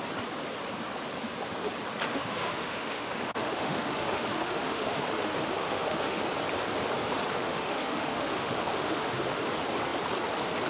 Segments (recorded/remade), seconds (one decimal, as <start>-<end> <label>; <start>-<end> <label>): 0.0-2.1 recorded; 2.1-6.2 remade; 6.2-7.3 recorded; 7.3-9.4 remade; 9.4-10.7 recorded